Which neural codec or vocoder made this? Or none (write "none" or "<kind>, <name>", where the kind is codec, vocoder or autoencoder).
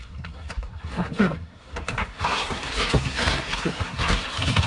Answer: codec, SNAC